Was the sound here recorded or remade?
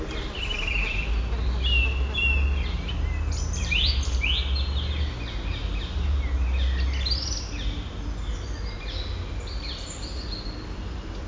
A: recorded